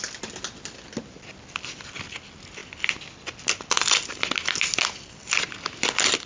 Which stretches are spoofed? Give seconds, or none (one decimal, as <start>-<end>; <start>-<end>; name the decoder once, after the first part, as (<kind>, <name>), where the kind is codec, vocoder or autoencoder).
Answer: none